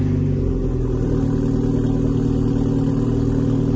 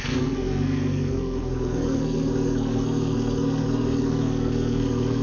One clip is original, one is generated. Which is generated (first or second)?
second